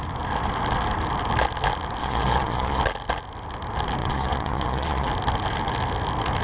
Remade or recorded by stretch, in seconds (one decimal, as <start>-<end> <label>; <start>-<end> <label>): 0.0-2.0 recorded; 2.0-2.8 remade; 2.8-4.0 recorded; 4.0-5.1 remade; 5.1-6.4 recorded